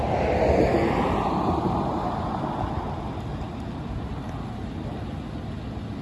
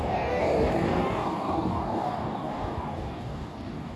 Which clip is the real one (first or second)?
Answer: first